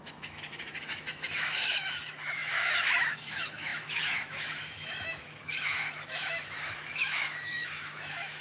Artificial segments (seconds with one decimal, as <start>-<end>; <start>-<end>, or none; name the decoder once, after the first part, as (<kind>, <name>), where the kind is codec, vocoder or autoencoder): 0.0-8.4 (autoencoder, DAC-VAE)